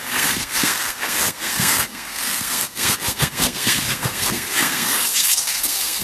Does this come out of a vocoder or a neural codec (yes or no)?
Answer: yes